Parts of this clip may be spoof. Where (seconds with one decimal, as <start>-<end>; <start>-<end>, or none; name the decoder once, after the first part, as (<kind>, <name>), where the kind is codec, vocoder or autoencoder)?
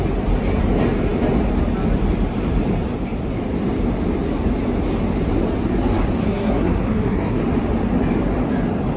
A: 6.2-7.4 (codec, SNAC)